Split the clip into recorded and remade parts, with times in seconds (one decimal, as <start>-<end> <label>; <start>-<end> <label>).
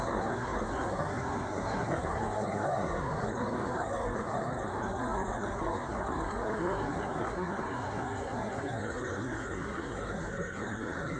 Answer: 0.0-11.2 remade